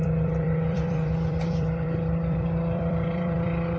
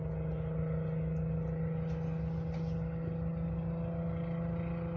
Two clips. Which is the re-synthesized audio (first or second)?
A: first